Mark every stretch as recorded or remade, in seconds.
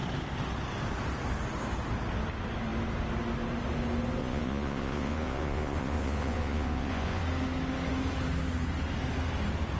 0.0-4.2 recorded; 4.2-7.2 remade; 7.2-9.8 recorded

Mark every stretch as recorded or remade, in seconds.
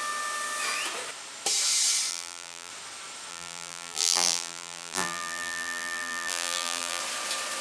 0.0-2.1 recorded; 2.1-2.7 remade; 2.7-3.3 recorded; 3.3-7.0 remade; 7.0-7.6 recorded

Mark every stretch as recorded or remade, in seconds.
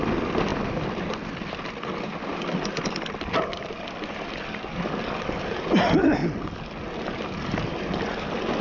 0.0-8.6 recorded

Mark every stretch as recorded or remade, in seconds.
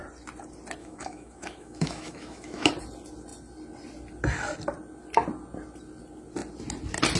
0.0-0.8 recorded; 0.8-2.7 remade; 2.7-7.2 recorded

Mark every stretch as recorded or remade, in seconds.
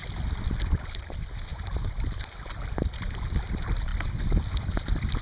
0.0-5.2 recorded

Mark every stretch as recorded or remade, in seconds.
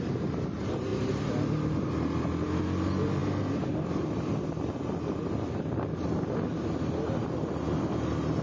0.0-8.4 recorded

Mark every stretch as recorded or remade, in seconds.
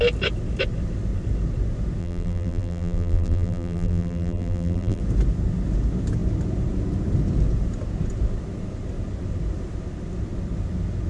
0.0-2.0 recorded; 2.0-5.0 remade; 5.0-11.1 recorded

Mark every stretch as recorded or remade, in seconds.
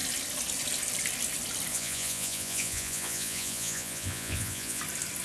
0.0-1.7 recorded; 1.7-4.8 remade; 4.8-5.2 recorded